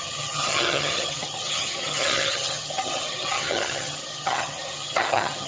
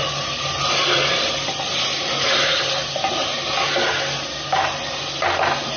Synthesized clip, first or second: first